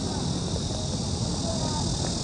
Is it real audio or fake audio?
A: real